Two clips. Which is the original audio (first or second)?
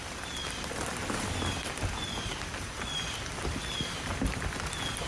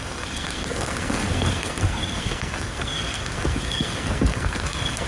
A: first